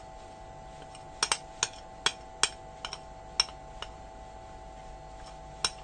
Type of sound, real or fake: real